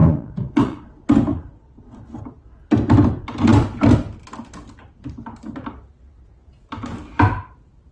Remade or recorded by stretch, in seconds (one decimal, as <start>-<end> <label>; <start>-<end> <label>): 0.0-0.9 remade; 0.9-1.3 recorded; 1.3-2.0 remade; 2.0-7.9 recorded